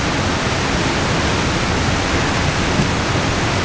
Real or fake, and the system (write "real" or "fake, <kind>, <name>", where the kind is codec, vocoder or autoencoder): real